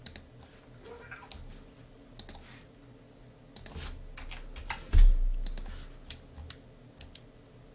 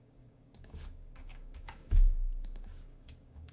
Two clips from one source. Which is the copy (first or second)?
second